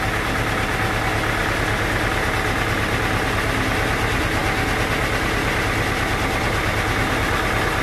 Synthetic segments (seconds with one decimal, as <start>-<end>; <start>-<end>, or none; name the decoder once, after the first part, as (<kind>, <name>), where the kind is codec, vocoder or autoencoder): none